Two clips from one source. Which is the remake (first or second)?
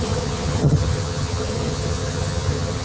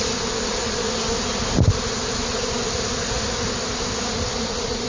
first